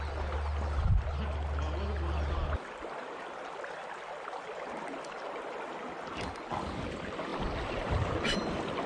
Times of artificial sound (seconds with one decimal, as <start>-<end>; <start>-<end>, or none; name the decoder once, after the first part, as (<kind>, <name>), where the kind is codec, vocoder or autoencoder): none